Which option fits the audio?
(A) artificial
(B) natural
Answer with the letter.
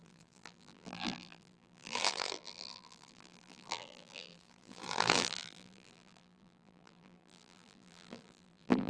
A